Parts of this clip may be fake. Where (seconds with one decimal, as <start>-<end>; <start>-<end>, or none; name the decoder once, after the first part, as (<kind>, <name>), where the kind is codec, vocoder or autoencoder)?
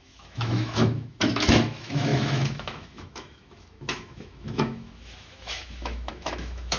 0.0-6.8 (autoencoder, DAC-VAE)